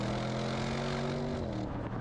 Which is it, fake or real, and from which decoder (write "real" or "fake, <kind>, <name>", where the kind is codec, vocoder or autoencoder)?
real